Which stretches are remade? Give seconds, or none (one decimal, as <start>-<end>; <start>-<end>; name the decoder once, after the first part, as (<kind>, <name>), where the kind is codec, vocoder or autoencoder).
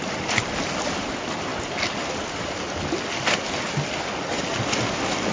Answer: 0.0-1.5 (vocoder, BigVGAN v2); 4.7-5.3